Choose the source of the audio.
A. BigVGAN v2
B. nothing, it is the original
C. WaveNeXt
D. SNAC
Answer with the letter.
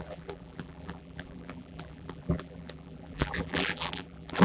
A